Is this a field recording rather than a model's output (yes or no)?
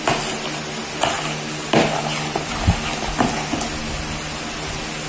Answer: yes